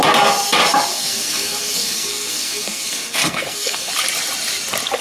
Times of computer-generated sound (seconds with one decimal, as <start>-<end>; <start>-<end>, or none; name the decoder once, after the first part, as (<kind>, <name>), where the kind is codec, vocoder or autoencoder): 0.9-3.9 (codec, SNAC)